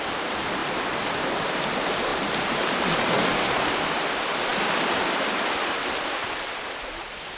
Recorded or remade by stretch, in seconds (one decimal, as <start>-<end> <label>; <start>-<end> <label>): 0.0-7.4 recorded